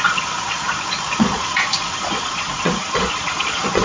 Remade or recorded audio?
remade